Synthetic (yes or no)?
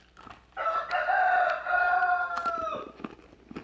no